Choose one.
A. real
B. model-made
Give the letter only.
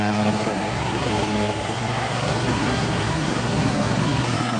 B